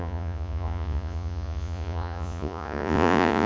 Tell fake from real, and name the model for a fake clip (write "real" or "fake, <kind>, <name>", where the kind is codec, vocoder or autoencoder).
fake, vocoder, Vocos